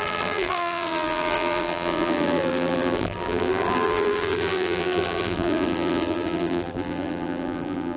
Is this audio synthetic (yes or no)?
yes